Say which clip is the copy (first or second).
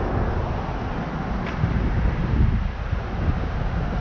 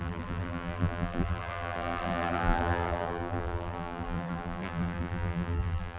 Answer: second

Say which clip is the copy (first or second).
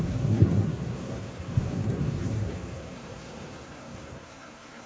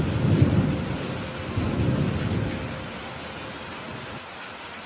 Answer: first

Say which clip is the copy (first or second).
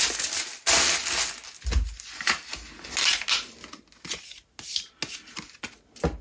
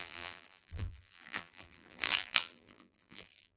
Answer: second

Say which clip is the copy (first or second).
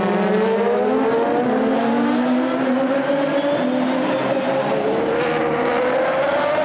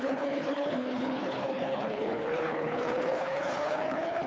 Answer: second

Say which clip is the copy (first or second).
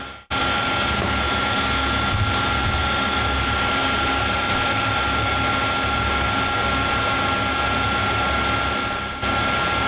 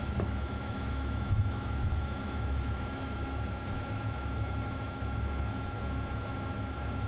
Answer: second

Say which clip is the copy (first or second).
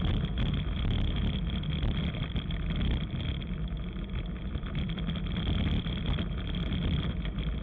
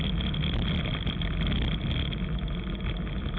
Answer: first